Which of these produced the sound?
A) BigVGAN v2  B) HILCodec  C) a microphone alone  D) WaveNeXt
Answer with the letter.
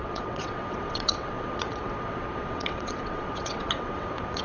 D